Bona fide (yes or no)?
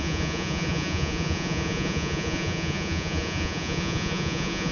no